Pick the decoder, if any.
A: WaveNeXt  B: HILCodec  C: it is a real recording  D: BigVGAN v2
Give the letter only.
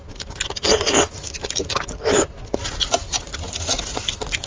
C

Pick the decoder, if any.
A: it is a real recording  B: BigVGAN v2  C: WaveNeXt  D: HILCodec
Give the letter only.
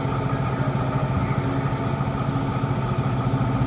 A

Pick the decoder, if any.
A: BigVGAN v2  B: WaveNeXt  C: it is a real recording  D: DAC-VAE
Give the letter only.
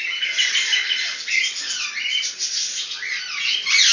C